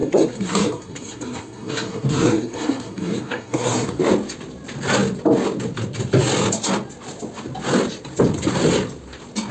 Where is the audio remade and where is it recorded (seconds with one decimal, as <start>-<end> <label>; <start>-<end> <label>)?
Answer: 0.0-4.0 remade; 4.0-9.5 recorded